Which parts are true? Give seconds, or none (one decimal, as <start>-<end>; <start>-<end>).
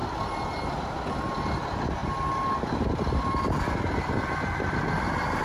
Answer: 0.0-5.4